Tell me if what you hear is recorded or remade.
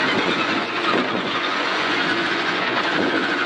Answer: remade